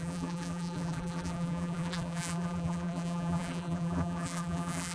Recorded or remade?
remade